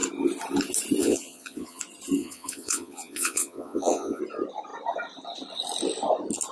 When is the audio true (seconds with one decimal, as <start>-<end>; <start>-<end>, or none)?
0.0-1.0; 1.8-2.2; 4.2-6.5